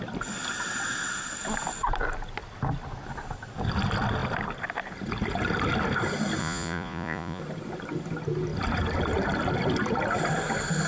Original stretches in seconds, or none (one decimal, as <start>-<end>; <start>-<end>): 0.0-6.4; 7.4-10.9